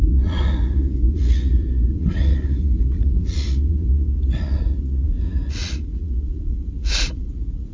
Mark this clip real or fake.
fake